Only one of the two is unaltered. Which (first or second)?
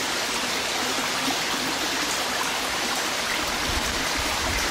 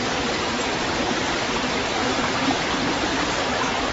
first